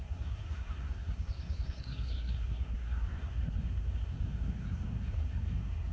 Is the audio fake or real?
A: fake